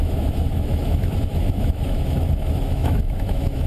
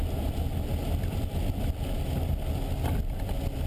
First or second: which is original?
second